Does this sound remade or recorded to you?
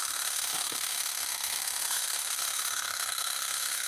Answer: remade